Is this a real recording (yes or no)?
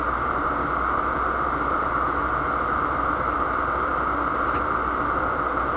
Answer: yes